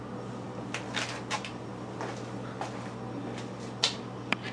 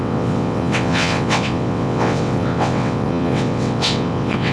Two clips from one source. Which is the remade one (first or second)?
second